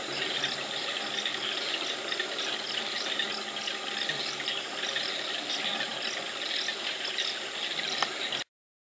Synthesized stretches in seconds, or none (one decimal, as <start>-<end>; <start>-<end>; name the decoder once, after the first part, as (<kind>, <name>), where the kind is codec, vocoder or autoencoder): 1.3-1.9 (vocoder, BigVGAN v2)